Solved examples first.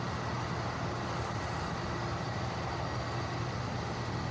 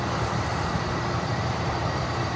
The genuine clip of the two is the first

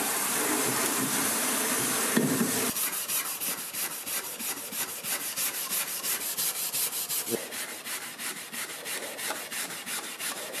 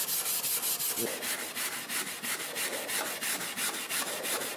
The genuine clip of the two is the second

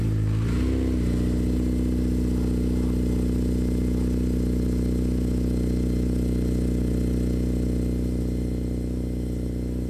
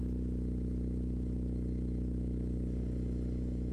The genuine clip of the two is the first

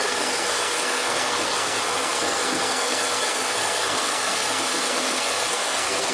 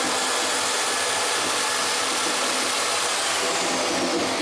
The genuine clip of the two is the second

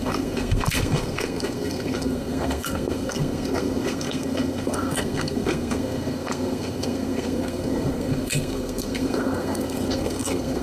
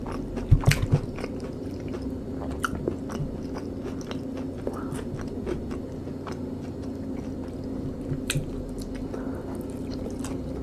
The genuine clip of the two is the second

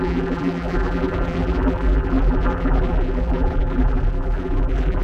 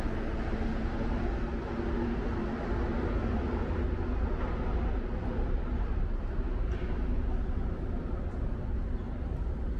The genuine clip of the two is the second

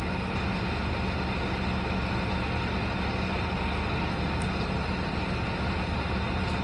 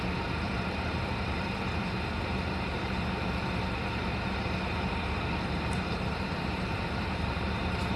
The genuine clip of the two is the first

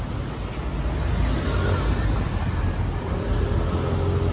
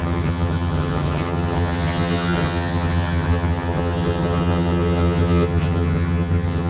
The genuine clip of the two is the first